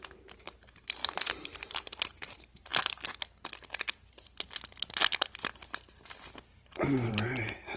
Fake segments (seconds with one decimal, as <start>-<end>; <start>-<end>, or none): 0.0-2.7; 6.3-7.8

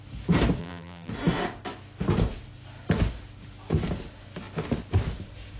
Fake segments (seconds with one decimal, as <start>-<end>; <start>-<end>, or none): 0.6-1.1